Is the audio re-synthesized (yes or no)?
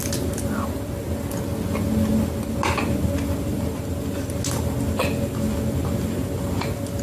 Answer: no